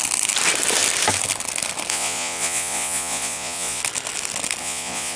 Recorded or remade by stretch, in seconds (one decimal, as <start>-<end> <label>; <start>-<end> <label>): 0.0-1.9 recorded; 1.9-3.8 remade; 3.8-4.6 recorded; 4.6-5.2 remade